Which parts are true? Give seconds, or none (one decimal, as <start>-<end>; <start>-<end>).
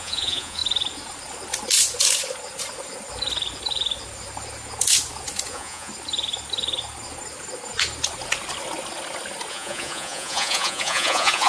0.6-5.5; 5.9-9.5